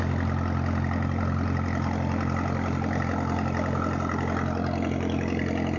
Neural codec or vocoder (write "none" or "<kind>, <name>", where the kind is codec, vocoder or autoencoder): none